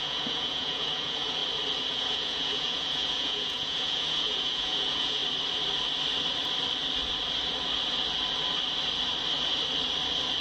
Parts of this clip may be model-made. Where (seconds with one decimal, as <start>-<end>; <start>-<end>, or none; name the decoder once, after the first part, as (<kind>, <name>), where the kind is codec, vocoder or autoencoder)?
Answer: 0.0-1.4 (vocoder, Vocos); 1.9-5.2